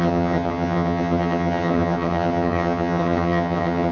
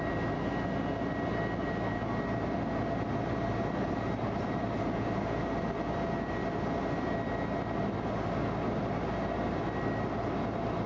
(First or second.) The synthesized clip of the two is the first